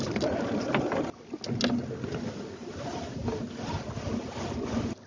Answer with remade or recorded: recorded